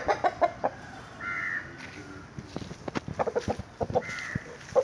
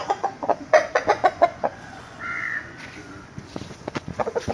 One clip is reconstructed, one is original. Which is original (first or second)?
first